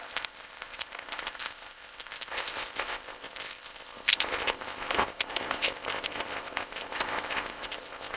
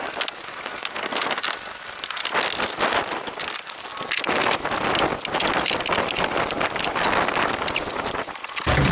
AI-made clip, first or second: first